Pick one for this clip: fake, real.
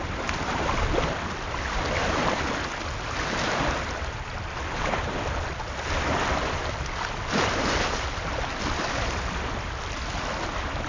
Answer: real